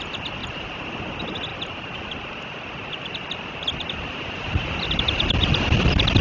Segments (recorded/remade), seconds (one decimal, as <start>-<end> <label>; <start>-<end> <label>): 0.0-0.4 recorded; 0.4-1.0 remade; 1.0-6.2 recorded